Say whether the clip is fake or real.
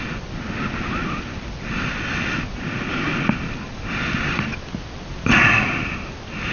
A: real